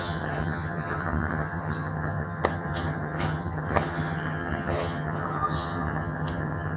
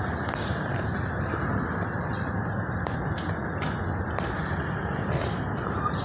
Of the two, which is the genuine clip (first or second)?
second